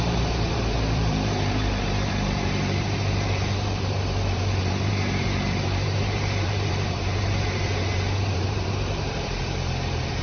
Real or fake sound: fake